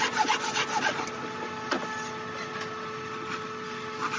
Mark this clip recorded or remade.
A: recorded